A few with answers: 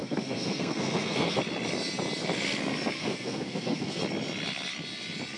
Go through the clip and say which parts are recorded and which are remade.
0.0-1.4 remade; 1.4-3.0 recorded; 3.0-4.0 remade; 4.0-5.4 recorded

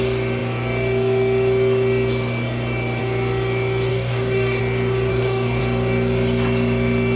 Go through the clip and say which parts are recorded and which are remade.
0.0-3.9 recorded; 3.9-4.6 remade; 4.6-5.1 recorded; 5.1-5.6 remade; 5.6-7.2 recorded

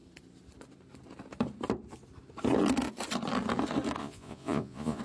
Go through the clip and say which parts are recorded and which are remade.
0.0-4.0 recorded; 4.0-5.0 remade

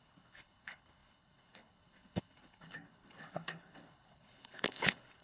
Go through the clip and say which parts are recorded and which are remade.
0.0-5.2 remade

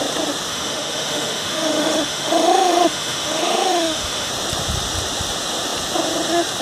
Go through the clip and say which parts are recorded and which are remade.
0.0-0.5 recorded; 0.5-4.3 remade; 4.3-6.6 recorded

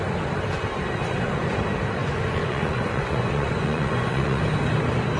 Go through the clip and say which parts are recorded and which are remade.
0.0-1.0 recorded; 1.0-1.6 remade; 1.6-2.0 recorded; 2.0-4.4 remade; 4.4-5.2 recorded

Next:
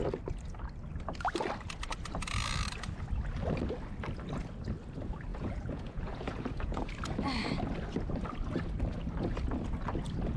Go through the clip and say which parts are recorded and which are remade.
0.0-5.3 recorded; 5.3-6.9 remade; 6.9-10.4 recorded

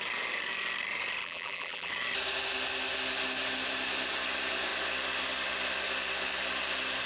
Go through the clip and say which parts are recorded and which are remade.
0.0-1.2 recorded; 1.2-1.9 remade; 1.9-7.1 recorded